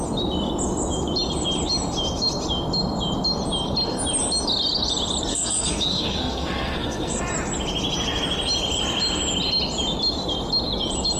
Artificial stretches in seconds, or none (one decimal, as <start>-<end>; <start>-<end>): 5.3-7.2